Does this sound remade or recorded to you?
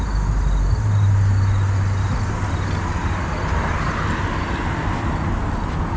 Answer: recorded